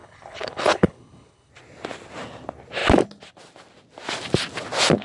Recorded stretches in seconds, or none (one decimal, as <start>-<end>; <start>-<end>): 1.5-5.0